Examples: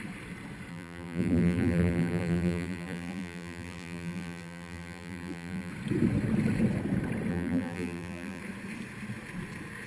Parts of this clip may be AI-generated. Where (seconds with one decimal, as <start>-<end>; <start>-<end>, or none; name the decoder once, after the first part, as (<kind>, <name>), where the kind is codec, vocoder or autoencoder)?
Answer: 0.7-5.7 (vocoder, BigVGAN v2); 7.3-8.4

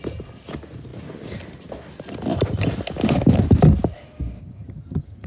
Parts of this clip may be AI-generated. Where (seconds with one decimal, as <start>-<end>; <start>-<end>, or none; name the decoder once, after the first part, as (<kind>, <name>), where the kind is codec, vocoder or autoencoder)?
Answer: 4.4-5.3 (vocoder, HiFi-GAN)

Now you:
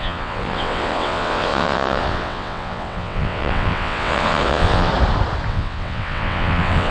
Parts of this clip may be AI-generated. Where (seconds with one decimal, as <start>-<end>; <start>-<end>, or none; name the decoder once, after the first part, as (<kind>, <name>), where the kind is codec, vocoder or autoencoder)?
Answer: 0.0-4.9 (vocoder, WaveNeXt); 5.5-6.9